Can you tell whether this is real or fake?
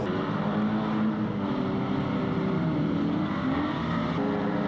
real